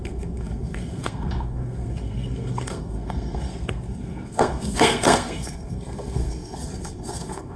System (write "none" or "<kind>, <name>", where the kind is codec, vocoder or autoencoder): codec, SNAC